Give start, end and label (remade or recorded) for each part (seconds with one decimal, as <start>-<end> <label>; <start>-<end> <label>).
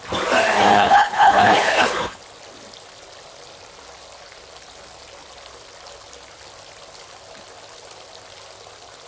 0.0-0.7 recorded; 0.7-2.2 remade; 2.2-9.1 recorded